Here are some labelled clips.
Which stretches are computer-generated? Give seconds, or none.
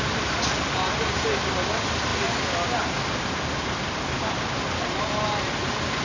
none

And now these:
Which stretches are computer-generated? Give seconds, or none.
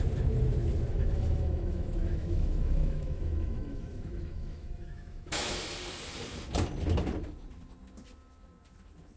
0.9-5.6 (autoencoder, DAC-VAE)